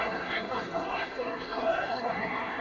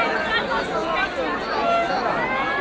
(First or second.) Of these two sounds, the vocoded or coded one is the first